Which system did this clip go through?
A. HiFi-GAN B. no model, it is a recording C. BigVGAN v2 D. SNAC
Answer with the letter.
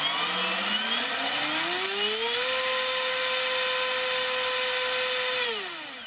B